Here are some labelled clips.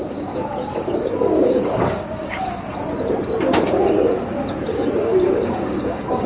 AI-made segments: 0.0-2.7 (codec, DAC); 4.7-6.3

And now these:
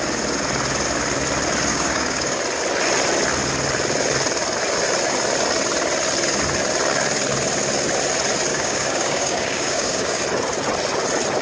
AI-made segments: 1.7-2.4 (codec, DAC); 8.5-10.2

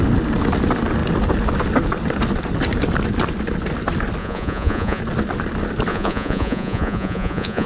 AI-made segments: 4.2-5.0 (vocoder, Vocos); 5.9-7.7

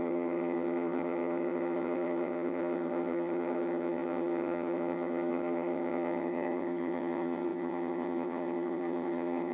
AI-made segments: 0.0-9.5 (vocoder, HiFi-GAN)

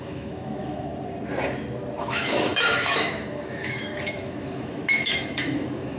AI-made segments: 0.0-0.9 (autoencoder, DAC-VAE); 2.0-6.0

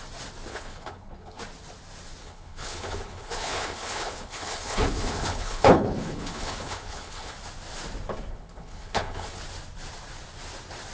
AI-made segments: 0.5-1.4 (codec, HILCodec); 2.2-7.3; 8.3-9.4